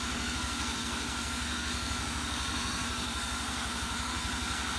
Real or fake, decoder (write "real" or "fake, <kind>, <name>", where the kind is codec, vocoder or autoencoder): fake, codec, SNAC